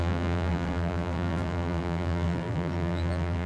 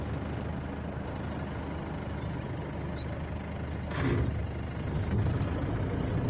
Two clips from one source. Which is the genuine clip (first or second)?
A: second